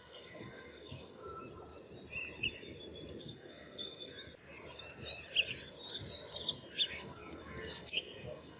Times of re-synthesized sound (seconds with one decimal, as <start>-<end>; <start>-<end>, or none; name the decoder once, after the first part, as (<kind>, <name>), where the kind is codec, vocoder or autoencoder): 0.0-1.2 (codec, SNAC); 3.2-4.1; 6.9-8.6

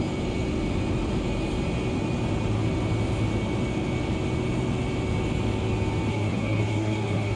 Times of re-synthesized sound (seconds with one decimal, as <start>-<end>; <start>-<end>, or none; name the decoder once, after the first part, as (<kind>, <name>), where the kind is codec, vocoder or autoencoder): 6.1-7.4 (codec, SNAC)

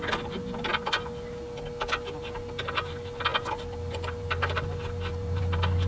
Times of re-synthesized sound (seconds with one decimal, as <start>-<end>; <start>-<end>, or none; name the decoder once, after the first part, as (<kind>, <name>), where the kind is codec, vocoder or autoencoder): none